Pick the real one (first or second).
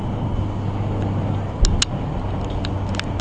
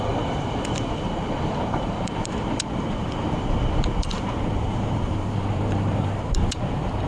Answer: first